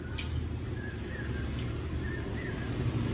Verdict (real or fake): real